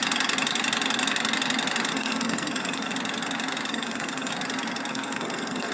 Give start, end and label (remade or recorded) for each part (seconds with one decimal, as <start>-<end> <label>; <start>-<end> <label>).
0.0-1.9 recorded; 1.9-2.9 remade; 2.9-3.7 recorded; 3.7-4.3 remade; 4.3-4.9 recorded; 4.9-5.7 remade